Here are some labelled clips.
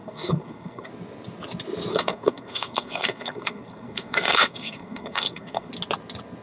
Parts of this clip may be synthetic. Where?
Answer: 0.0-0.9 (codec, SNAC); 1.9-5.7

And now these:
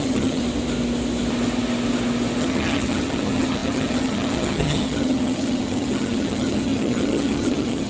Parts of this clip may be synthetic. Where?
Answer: 0.0-0.4 (vocoder, HiFi-GAN); 2.4-7.9

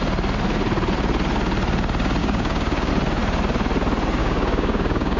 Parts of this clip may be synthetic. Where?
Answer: 2.2-2.9 (codec, DAC); 4.2-5.2